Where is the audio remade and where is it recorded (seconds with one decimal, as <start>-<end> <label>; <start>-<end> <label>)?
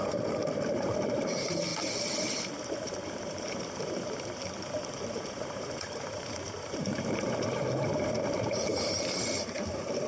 0.0-10.1 remade